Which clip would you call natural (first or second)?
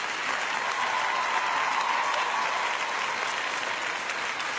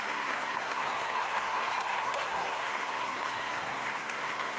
first